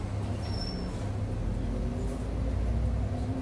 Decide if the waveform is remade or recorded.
recorded